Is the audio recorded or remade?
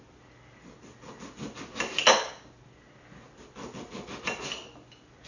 recorded